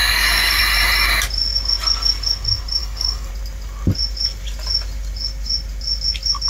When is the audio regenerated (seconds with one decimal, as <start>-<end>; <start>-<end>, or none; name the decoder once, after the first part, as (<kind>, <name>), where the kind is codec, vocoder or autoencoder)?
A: 0.0-0.6 (codec, DAC); 2.8-3.3